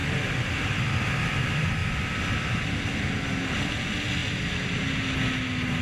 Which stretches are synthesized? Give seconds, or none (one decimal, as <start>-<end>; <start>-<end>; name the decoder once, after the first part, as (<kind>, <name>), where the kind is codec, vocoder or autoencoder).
0.0-0.8 (vocoder, BigVGAN v2); 1.8-2.5; 4.2-4.8